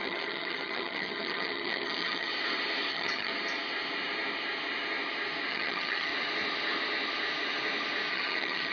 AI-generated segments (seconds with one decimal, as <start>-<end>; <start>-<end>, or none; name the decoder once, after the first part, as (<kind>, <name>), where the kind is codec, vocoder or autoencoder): 0.0-2.3 (vocoder, HiFi-GAN); 2.9-3.3; 5.5-6.1; 8.1-8.7